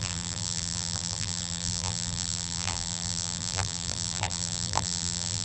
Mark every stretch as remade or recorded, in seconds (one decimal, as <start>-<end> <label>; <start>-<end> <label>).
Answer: 0.0-5.4 remade